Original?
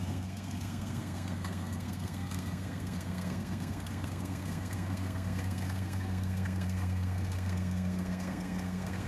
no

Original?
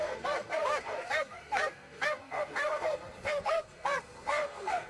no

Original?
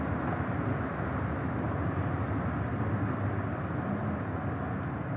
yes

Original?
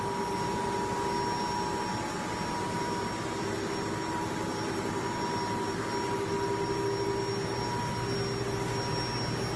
yes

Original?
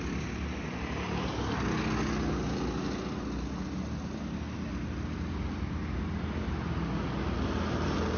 yes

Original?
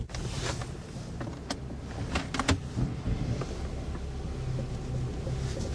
yes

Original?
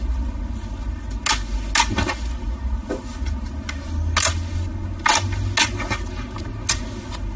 yes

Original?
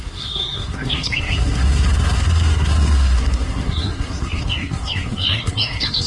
no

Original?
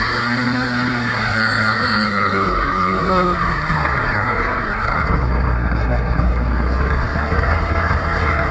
no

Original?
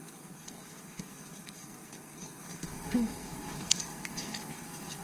no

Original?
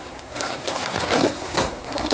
no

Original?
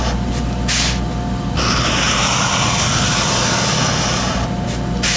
yes